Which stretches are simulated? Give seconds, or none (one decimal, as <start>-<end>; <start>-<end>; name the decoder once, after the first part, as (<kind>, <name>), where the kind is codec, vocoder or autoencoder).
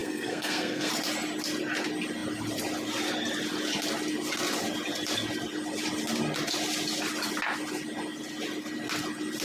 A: 0.0-0.9 (codec, SNAC)